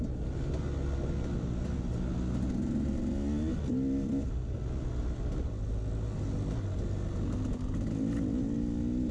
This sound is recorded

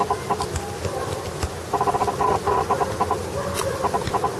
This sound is recorded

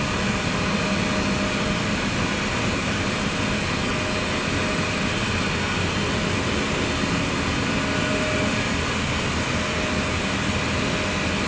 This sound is recorded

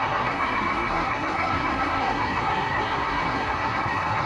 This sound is remade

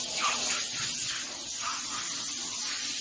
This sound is recorded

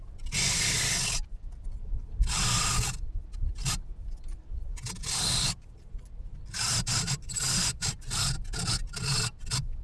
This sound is recorded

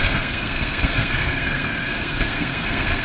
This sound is remade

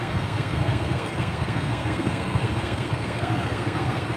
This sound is remade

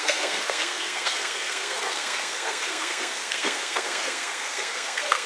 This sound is remade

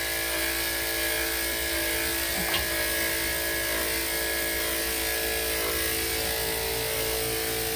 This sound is recorded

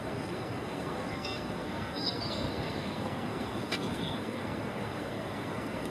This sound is remade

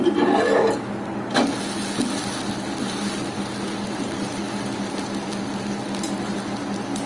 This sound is recorded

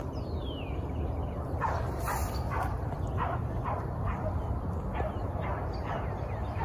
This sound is recorded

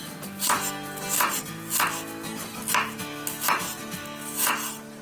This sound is recorded